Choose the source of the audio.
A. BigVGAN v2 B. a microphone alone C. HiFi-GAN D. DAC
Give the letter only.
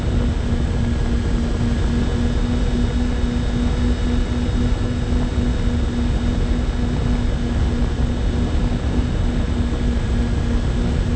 B